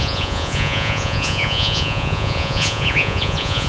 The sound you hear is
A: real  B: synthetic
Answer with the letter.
B